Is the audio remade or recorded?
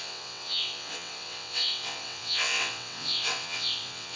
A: remade